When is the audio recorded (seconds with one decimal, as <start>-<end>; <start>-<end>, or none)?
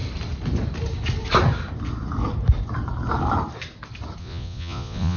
0.0-4.2